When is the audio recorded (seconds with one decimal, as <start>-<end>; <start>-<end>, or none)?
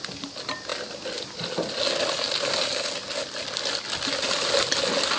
0.0-5.2